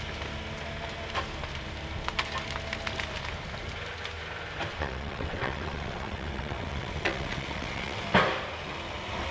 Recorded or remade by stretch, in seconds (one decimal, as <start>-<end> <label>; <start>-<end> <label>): 0.0-4.7 recorded; 4.7-8.0 remade; 8.0-9.3 recorded